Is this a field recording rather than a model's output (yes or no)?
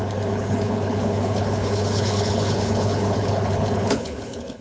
no